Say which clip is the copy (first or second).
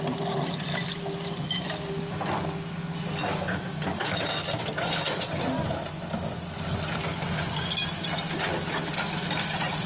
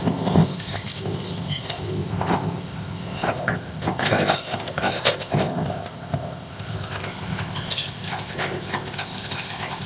second